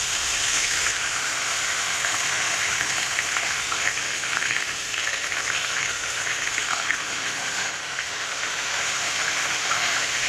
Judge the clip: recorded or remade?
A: remade